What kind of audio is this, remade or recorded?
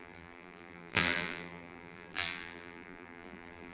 remade